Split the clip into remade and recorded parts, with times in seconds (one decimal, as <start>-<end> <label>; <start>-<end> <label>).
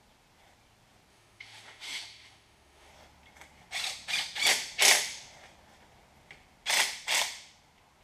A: 0.0-1.1 recorded; 1.1-2.9 remade; 2.9-8.0 recorded